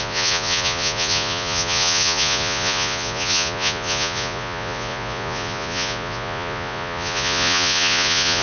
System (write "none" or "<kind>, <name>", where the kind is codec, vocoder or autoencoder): vocoder, Vocos